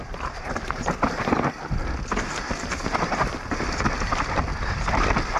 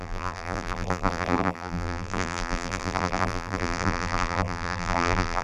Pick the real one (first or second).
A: first